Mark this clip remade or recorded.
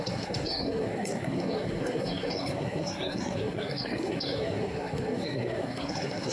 remade